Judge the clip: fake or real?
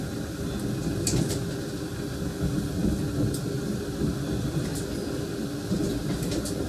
real